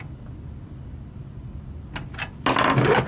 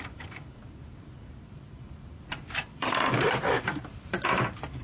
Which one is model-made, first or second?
second